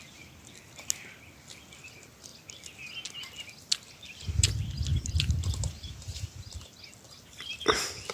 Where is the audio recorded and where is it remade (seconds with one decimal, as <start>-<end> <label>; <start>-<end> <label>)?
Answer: 0.0-4.9 recorded; 4.9-6.8 remade; 6.8-8.1 recorded